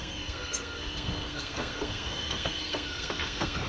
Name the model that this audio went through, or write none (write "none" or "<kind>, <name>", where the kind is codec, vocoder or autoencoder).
codec, SNAC